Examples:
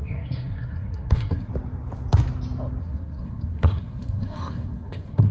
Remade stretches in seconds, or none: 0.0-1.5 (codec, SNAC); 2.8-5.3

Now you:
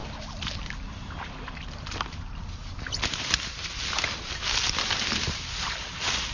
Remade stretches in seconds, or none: none

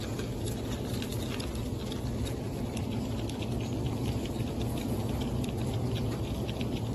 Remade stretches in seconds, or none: none

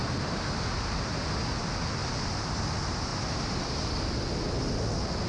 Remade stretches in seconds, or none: 0.0-1.1 (vocoder, BigVGAN v2); 2.0-2.7; 3.1-3.9

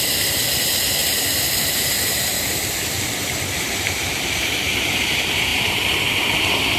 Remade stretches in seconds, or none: 1.0-5.1 (vocoder, BigVGAN v2); 5.5-6.2